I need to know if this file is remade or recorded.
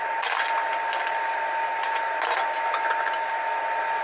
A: recorded